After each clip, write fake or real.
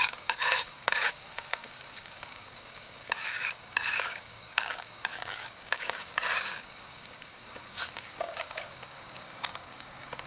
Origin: fake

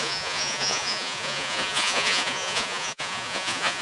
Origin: fake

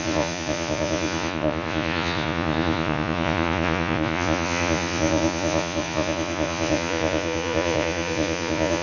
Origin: fake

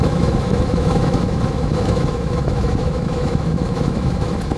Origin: fake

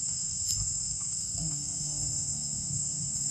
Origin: fake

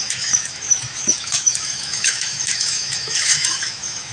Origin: fake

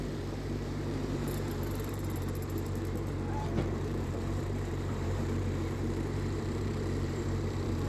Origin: fake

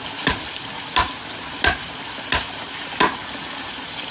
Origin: real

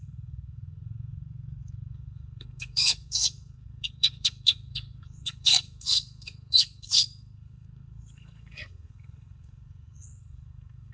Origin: fake